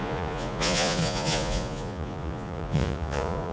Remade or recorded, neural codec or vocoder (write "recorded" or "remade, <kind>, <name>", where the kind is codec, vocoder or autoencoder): remade, vocoder, Vocos